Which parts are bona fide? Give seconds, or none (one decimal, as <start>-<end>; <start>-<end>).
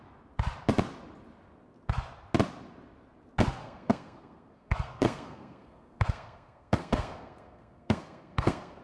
0.0-3.6